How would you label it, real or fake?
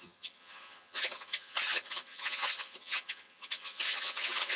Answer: fake